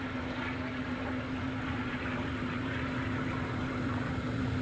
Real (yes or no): no